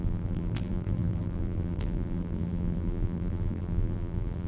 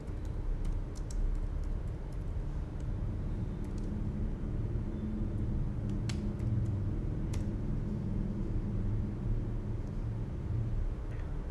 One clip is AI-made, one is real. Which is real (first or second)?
second